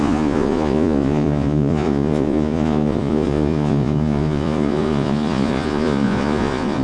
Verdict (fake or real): fake